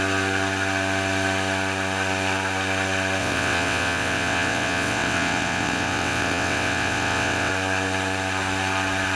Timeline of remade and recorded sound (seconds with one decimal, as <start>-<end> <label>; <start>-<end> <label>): 0.0-3.2 recorded; 3.2-7.5 remade; 7.5-9.1 recorded